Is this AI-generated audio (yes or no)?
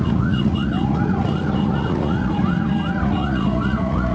yes